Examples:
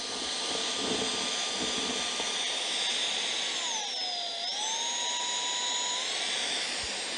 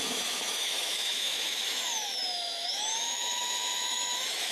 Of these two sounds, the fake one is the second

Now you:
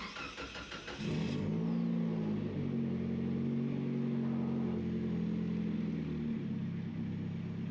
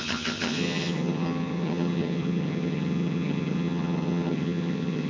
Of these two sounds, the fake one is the second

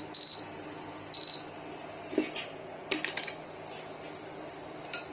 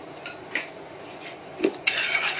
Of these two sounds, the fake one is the second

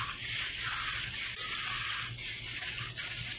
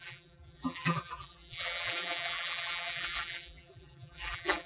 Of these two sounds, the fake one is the second